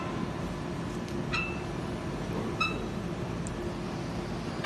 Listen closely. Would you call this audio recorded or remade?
recorded